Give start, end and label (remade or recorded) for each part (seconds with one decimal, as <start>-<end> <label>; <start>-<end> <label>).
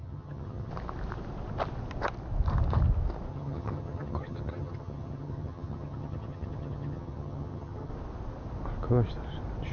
0.0-0.7 remade; 0.7-3.3 recorded; 3.3-7.9 remade; 7.9-9.7 recorded